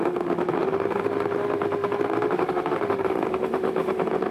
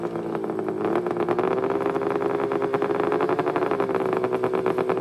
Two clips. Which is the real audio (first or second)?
second